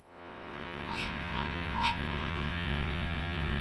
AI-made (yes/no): yes